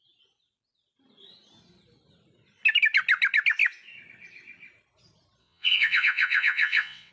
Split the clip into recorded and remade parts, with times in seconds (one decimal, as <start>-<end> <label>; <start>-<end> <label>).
0.0-5.4 recorded; 5.4-7.1 remade